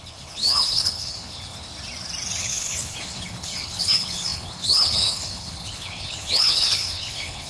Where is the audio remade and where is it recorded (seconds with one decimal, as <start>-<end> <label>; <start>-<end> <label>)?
0.0-1.7 remade; 1.7-2.4 recorded; 2.4-7.5 remade